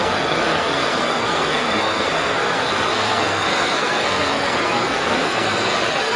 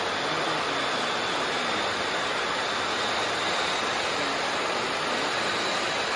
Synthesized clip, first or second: first